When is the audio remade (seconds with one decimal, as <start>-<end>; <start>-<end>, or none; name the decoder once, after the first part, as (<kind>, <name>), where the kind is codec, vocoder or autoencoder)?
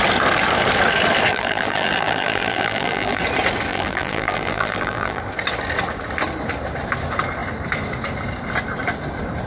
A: 1.3-3.2 (vocoder, BigVGAN v2); 3.7-5.2